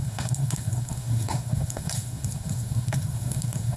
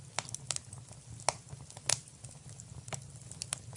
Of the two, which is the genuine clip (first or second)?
second